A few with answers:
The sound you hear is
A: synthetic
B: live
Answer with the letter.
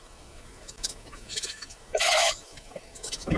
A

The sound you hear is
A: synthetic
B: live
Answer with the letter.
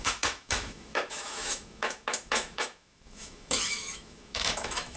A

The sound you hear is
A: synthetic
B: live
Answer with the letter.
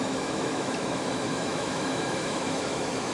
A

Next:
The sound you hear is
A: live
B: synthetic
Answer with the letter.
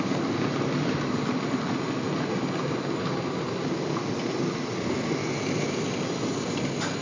A